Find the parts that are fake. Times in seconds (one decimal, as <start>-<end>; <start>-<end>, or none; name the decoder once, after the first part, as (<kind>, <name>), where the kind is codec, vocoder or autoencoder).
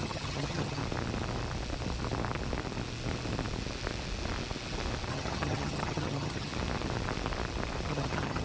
0.0-0.8 (vocoder, HiFi-GAN); 5.1-6.5; 7.9-8.4